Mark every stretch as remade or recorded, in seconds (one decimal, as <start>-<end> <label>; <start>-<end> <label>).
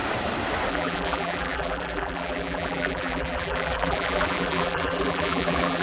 0.0-0.7 recorded; 0.7-5.8 remade